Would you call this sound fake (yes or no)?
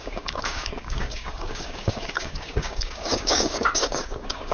yes